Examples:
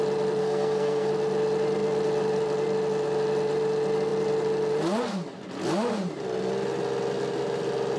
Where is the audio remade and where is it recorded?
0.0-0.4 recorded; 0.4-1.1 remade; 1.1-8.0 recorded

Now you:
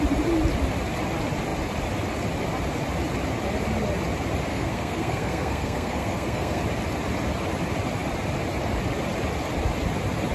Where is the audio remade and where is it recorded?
0.0-4.5 recorded; 4.5-6.6 remade; 6.6-10.3 recorded

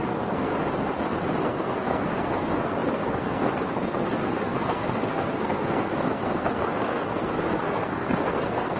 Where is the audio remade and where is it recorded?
0.0-0.5 remade; 0.5-1.4 recorded; 1.4-8.8 remade

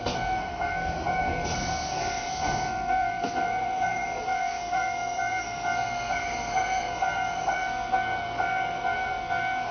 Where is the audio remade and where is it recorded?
0.0-9.7 remade